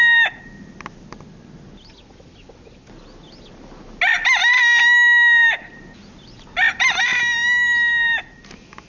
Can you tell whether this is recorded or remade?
recorded